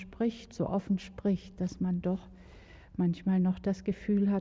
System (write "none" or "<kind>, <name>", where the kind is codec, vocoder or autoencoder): none